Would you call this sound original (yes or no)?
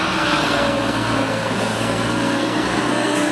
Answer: no